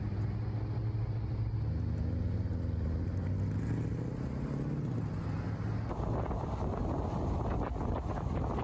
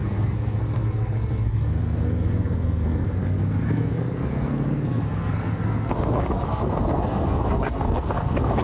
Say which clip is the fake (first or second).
second